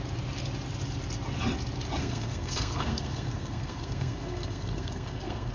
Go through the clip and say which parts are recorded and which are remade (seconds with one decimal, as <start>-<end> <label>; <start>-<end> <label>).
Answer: 0.0-2.0 recorded; 2.0-5.5 remade

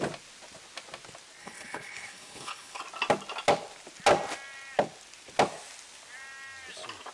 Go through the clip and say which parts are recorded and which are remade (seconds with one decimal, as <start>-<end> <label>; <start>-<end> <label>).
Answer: 0.0-1.4 recorded; 1.4-2.8 remade; 2.8-7.1 recorded

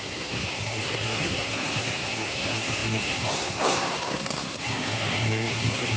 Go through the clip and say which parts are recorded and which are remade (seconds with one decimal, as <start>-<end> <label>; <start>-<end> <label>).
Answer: 0.0-6.0 remade

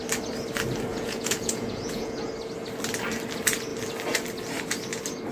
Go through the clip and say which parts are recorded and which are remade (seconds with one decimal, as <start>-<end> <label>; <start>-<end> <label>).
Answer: 0.0-0.9 recorded; 0.9-2.2 remade; 2.2-5.3 recorded

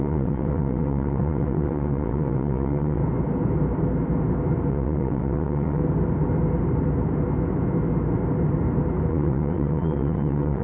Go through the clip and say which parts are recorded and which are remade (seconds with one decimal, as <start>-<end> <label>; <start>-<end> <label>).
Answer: 0.0-3.0 remade; 3.0-4.7 recorded; 4.7-5.8 remade; 5.8-9.1 recorded; 9.1-10.6 remade

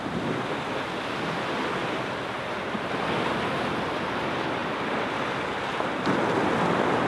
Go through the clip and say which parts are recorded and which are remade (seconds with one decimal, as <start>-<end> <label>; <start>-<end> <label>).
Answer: 0.0-7.1 recorded